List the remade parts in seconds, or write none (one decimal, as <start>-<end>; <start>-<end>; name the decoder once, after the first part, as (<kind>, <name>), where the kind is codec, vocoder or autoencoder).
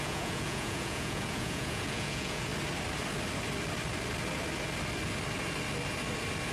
0.0-2.5 (vocoder, Vocos)